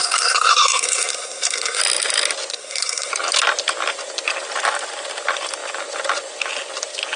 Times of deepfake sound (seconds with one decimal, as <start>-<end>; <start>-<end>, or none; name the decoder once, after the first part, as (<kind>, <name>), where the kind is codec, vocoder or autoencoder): 0.0-1.8 (codec, SNAC); 2.5-3.1